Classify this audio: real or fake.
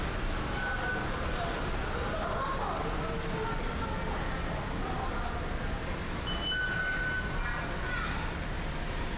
real